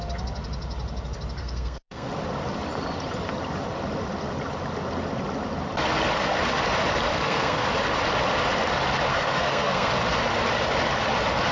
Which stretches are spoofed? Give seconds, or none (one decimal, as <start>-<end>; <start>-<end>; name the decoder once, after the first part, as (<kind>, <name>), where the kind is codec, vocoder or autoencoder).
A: 1.4-2.1 (codec, SNAC); 7.1-7.7; 9.1-9.9